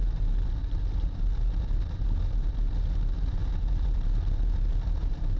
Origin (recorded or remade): recorded